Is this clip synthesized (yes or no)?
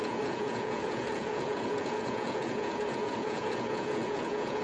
yes